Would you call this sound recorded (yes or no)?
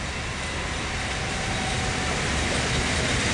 yes